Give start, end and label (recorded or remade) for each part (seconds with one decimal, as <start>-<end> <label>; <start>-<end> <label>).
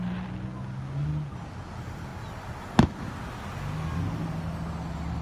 0.0-5.2 recorded